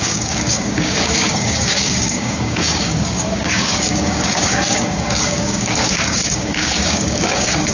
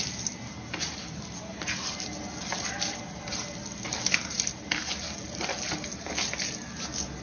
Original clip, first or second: second